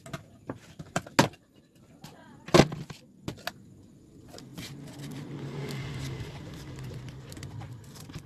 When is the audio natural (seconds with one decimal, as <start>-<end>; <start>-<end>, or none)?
0.0-8.3